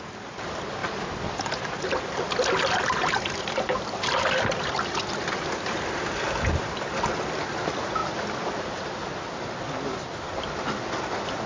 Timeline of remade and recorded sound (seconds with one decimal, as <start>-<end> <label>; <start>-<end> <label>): 0.0-11.5 recorded